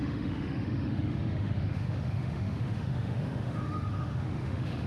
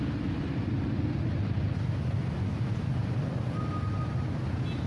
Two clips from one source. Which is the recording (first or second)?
second